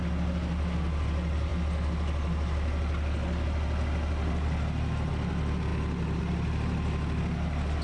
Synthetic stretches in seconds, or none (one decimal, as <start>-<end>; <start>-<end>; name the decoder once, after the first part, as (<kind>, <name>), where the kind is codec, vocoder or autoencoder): none